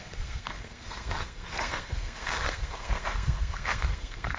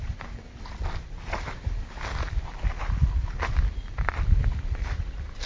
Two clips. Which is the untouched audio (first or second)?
second